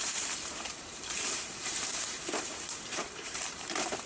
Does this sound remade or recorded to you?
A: remade